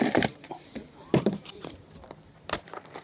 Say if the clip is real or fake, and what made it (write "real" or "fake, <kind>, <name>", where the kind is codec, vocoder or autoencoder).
fake, vocoder, BigVGAN v2